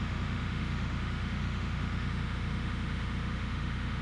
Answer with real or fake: fake